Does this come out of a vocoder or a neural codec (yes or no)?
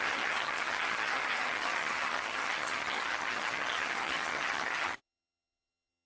yes